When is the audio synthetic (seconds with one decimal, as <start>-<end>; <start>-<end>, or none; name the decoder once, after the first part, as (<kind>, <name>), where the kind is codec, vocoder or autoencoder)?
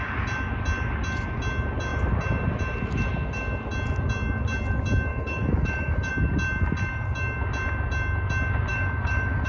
5.1-6.1 (autoencoder, DAC-VAE); 8.7-9.5